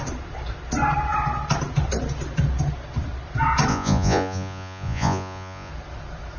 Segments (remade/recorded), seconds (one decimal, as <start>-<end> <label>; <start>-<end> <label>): 0.0-3.7 recorded; 3.7-5.7 remade; 5.7-6.4 recorded